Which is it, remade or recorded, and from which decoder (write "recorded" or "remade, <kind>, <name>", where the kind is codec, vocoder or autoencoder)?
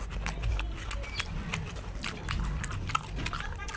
recorded